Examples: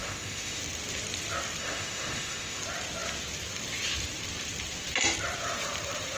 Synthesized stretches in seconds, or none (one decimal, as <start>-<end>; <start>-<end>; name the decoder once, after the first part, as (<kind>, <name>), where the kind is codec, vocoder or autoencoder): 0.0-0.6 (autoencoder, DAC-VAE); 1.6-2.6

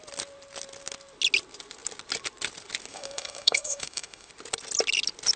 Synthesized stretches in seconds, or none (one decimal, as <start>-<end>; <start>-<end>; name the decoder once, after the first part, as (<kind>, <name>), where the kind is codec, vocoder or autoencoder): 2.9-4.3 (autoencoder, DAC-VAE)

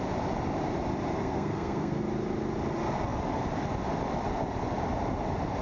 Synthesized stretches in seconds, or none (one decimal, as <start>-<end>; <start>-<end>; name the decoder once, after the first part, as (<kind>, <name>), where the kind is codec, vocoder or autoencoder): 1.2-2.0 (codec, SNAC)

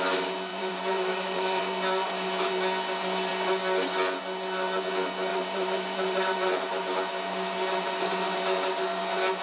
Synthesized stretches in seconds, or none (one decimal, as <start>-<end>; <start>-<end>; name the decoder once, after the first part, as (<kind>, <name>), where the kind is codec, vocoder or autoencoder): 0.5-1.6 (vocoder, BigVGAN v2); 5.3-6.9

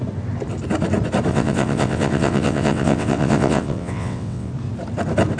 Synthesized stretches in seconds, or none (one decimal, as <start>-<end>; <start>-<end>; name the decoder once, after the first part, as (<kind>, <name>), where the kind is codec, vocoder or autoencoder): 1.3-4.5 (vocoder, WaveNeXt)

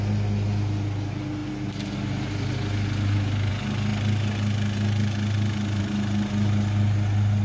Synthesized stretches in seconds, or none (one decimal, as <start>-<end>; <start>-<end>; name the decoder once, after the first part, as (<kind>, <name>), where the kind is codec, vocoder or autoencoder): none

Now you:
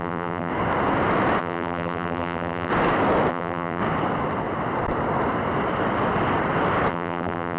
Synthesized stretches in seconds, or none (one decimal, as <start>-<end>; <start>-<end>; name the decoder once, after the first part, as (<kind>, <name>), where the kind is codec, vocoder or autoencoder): 0.0-0.5 (vocoder, BigVGAN v2); 1.4-2.7; 3.3-3.8; 6.9-7.6